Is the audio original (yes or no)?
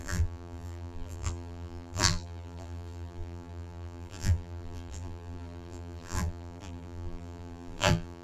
no